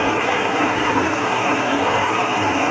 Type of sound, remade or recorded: remade